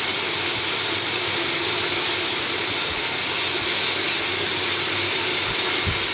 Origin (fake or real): real